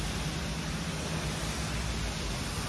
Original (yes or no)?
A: yes